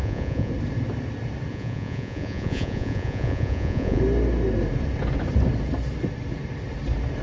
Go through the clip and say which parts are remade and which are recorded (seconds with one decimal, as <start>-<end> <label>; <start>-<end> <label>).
0.0-0.5 remade; 0.5-1.5 recorded; 1.5-4.0 remade; 4.0-7.2 recorded